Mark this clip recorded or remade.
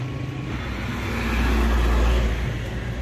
recorded